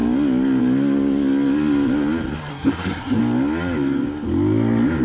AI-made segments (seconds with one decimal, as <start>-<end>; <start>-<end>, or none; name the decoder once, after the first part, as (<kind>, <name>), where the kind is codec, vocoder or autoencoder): 2.5-3.2 (codec, SNAC)